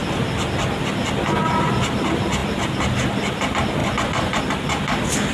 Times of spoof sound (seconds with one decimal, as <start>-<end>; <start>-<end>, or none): 3.8-4.4